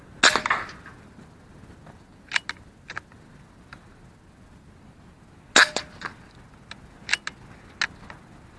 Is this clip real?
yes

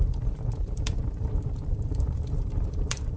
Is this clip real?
no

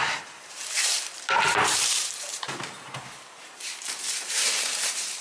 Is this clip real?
no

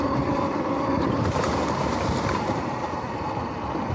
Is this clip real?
no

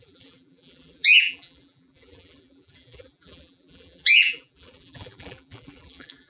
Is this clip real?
no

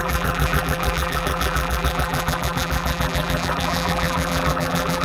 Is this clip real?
no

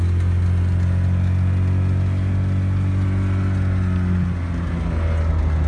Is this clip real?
yes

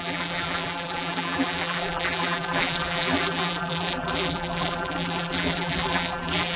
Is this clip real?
no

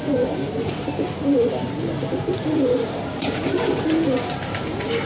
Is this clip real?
no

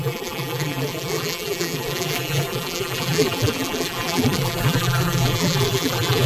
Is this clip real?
no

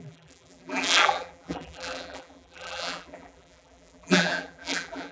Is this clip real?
no